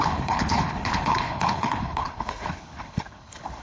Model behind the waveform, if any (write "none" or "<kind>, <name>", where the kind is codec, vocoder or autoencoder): codec, HILCodec